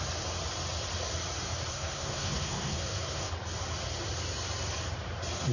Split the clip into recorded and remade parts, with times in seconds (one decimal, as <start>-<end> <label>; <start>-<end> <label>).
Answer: 0.0-1.7 recorded; 1.7-3.3 remade; 3.3-5.5 recorded